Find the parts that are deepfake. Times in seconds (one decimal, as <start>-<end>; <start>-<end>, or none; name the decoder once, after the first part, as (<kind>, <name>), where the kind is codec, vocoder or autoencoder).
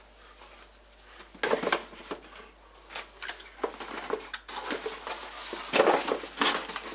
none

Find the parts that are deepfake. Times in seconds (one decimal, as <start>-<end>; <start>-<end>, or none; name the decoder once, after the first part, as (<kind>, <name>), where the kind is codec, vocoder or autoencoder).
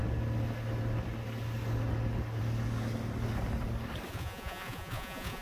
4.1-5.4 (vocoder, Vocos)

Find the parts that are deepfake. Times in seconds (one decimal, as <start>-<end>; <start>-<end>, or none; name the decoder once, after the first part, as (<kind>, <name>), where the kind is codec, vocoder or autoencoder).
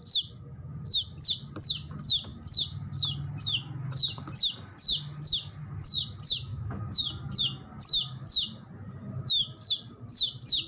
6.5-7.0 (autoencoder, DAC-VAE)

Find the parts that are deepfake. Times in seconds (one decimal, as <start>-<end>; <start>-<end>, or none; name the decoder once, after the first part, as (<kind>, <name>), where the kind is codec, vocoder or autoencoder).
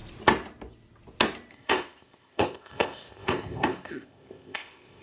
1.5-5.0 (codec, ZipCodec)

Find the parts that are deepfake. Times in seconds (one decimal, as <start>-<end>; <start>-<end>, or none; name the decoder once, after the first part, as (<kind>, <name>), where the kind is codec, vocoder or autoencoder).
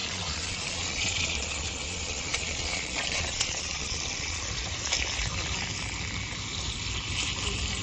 0.0-4.4 (vocoder, Vocos)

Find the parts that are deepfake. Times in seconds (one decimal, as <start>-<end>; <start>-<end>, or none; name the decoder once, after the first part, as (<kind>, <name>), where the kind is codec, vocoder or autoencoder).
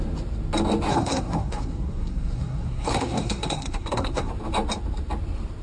0.9-4.3 (codec, SNAC)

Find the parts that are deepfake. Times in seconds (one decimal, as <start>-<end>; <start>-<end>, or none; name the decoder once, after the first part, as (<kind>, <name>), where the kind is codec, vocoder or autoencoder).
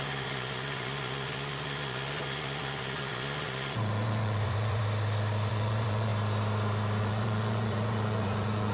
0.0-4.8 (vocoder, Vocos); 5.5-6.1; 7.0-8.7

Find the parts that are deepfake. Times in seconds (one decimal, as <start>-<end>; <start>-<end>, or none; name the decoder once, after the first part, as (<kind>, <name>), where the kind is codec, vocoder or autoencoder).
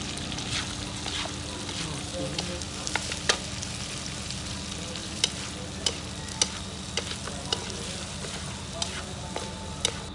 none